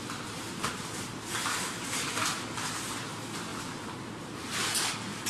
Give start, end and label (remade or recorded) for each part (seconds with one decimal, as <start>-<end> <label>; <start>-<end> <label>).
0.0-5.3 recorded